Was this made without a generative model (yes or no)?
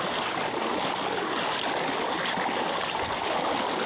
yes